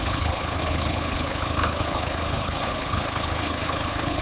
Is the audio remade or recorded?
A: remade